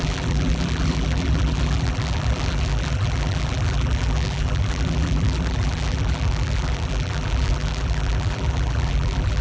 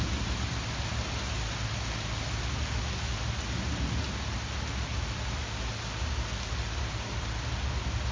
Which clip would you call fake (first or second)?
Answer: first